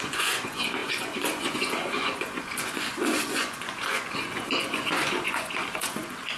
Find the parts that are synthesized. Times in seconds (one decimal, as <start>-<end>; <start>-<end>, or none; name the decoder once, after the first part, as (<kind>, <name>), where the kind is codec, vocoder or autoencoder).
0.0-6.4 (vocoder, Vocos)